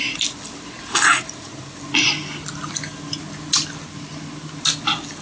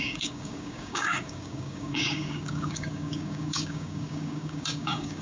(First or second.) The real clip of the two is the first